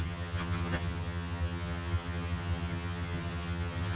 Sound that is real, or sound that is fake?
fake